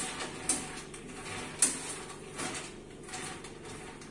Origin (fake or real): real